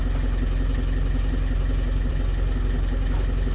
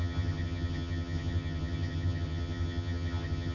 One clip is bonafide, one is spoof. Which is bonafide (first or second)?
first